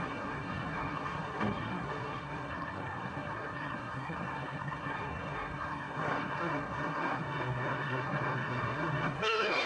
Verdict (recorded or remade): remade